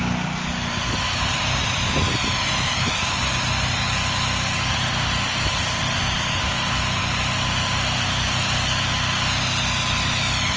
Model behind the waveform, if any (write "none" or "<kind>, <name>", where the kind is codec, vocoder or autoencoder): none